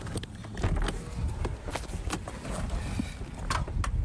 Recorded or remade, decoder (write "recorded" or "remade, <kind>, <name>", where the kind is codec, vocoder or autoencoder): recorded